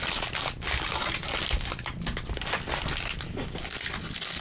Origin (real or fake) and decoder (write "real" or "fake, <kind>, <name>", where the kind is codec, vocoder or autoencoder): real